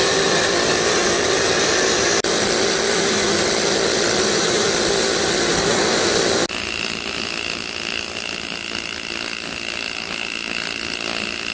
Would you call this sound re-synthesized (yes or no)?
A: no